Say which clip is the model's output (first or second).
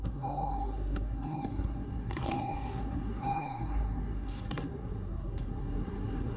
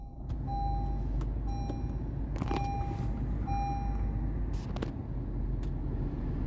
first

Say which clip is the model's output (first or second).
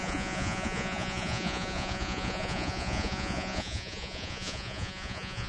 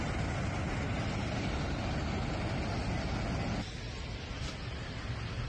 first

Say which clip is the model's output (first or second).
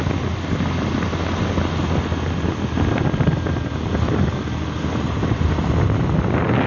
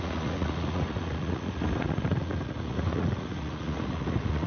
second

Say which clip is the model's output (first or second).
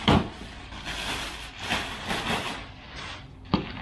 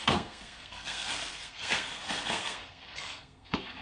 second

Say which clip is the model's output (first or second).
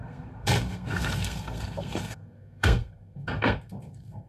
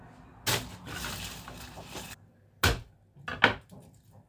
first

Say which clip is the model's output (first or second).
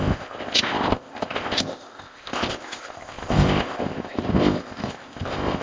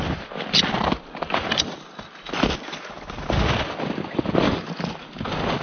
first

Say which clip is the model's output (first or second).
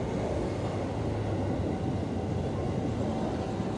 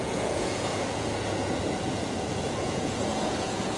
second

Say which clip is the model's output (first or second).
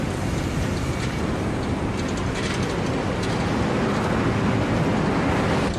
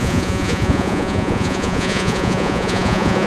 second